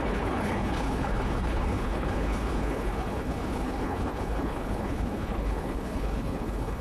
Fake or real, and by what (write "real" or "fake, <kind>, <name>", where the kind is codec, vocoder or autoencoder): fake, codec, HILCodec